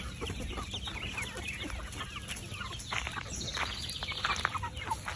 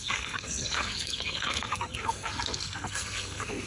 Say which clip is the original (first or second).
first